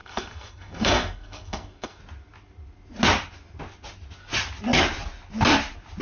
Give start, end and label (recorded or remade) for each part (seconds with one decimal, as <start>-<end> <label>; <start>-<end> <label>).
0.0-2.0 remade; 2.0-6.0 recorded